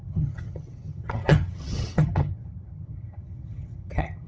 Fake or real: fake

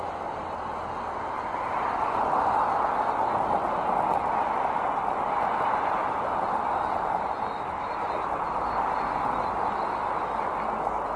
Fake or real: real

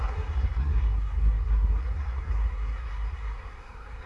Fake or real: fake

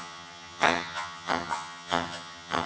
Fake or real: fake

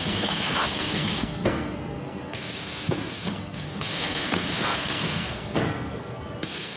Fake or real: fake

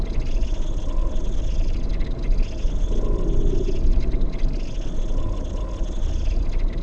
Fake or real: real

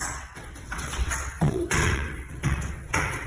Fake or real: fake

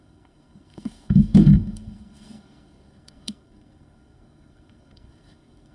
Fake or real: fake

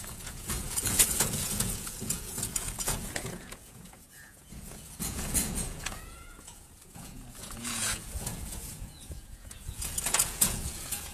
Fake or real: fake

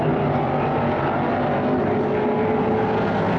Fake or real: real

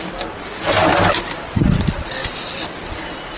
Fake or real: real